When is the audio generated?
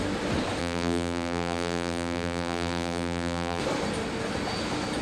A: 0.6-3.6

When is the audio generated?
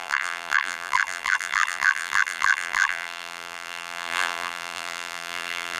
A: 0.0-5.8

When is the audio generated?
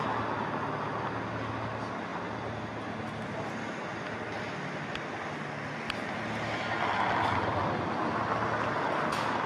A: 2.1-2.6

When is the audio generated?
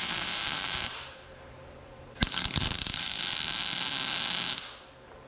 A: 0.0-3.2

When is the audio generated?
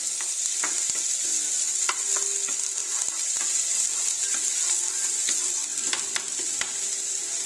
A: none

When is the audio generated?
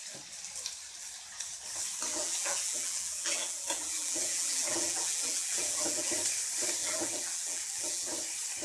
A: 2.1-6.1; 6.8-8.1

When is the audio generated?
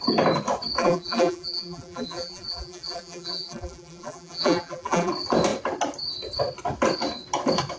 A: 0.8-5.1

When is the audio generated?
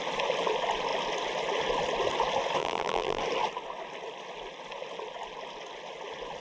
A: 2.6-3.2